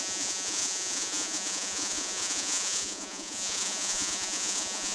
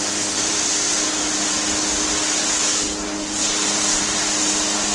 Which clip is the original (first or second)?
second